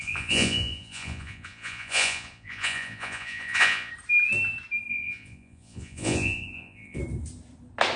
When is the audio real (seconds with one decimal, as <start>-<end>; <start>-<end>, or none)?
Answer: 3.9-4.9; 7.0-8.0